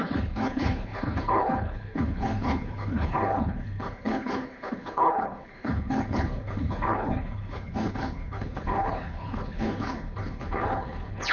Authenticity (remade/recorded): remade